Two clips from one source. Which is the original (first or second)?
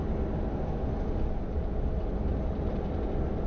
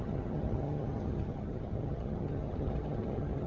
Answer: first